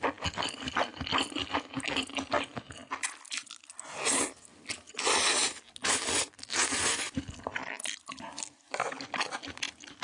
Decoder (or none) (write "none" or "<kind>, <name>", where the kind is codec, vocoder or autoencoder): none